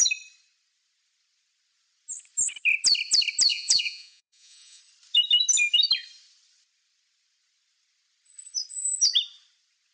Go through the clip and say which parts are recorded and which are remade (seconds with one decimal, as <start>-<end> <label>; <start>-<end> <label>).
0.0-3.5 recorded; 3.5-4.8 remade; 4.8-9.9 recorded